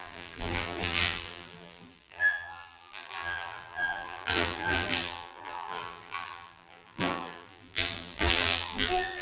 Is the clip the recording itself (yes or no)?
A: no